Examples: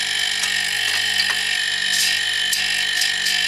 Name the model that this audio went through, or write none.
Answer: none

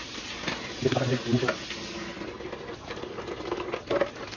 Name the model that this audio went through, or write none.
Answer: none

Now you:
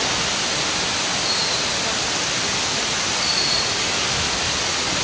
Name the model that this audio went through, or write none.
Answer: none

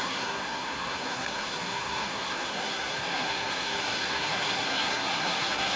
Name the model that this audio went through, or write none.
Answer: codec, SNAC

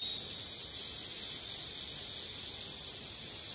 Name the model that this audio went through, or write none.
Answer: none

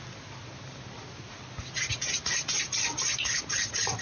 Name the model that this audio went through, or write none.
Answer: none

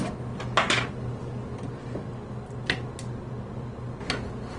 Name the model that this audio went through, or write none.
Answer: none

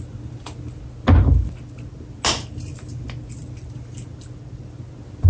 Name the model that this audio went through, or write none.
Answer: none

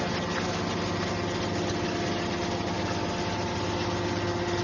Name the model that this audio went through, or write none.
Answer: none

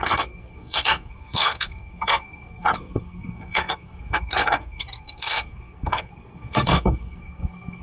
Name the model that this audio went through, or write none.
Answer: codec, SNAC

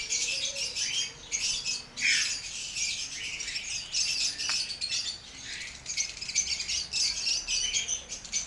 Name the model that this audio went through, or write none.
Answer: none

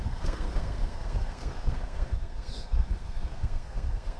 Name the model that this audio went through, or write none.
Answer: codec, SNAC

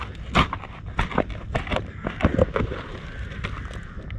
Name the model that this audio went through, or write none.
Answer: none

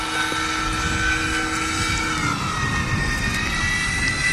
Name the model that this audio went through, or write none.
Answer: none